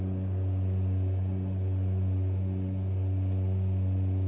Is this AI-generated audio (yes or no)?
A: no